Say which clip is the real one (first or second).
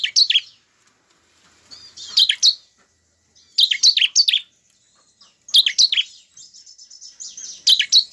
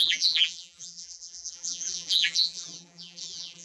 first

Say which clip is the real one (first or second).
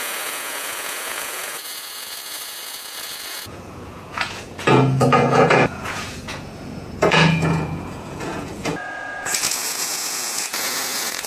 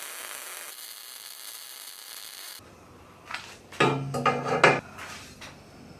second